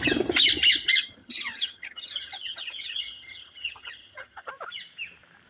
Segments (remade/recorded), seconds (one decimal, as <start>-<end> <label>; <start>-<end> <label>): 0.0-1.2 recorded; 1.2-4.5 remade; 4.5-5.5 recorded